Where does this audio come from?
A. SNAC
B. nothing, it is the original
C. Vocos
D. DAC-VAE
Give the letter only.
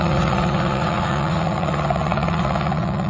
C